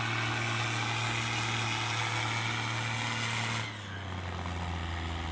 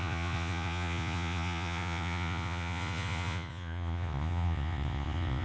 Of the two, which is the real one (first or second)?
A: first